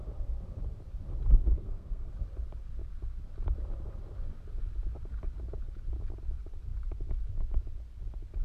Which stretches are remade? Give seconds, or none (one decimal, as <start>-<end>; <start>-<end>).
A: 1.4-2.1